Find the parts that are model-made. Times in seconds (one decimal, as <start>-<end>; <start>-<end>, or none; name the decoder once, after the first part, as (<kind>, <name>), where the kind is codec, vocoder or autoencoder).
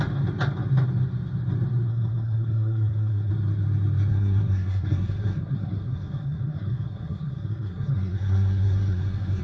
1.9-3.3 (codec, SNAC); 4.1-9.4